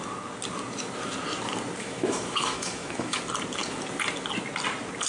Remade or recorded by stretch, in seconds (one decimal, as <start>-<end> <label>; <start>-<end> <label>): 0.0-1.8 recorded; 1.8-3.2 remade; 3.2-5.1 recorded